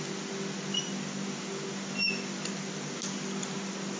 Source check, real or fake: real